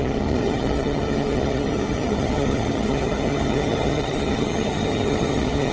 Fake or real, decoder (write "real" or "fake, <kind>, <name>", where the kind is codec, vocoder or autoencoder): fake, vocoder, HiFi-GAN